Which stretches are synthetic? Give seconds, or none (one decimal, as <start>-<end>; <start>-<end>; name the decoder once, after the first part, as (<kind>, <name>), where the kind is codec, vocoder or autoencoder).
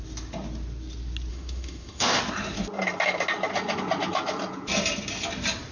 1.3-2.2 (autoencoder, DAC-VAE)